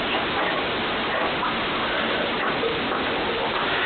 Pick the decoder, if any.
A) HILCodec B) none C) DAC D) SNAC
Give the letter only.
B